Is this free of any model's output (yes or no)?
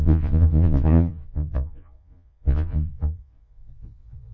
no